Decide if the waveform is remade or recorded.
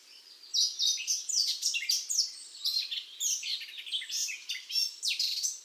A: remade